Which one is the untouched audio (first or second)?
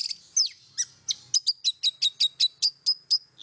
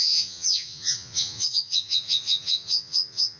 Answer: first